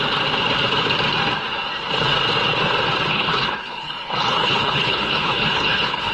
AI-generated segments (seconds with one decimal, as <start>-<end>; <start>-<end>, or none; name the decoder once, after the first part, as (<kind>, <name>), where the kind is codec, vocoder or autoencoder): 3.1-6.1 (codec, HILCodec)